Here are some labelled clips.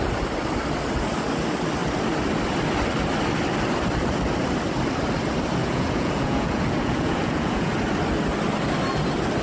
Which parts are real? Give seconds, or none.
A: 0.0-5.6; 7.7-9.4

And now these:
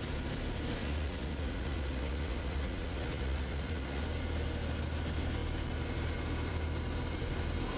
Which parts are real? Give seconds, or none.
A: 0.0-0.8; 4.0-7.8

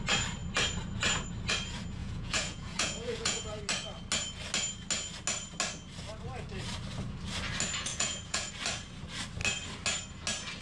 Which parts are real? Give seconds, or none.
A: 0.0-2.0; 3.6-7.9; 8.5-10.6

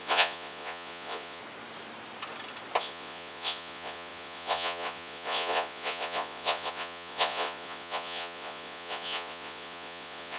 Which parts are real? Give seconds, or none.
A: 1.4-2.8

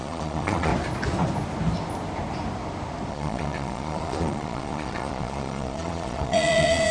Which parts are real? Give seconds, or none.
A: 0.7-3.1

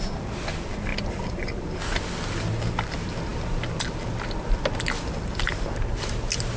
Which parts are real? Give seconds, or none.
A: 0.0-6.6

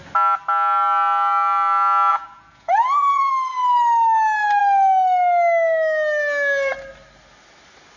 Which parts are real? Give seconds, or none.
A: 0.0-2.1; 3.3-8.0

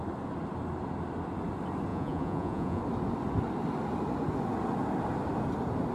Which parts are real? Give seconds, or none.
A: 0.0-1.9; 2.8-5.9